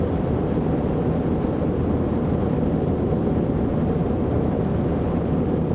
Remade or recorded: remade